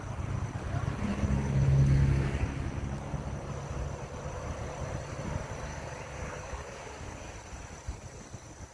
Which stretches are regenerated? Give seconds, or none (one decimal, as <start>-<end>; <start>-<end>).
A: 1.1-3.1; 5.7-7.3